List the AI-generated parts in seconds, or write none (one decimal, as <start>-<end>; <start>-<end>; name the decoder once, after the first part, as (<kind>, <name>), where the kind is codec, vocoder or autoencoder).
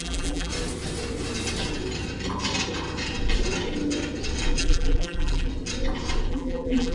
0.0-0.5 (vocoder, BigVGAN v2); 4.6-5.5; 6.3-6.9